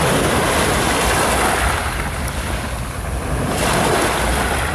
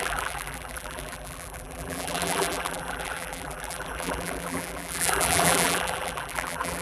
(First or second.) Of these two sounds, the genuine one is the first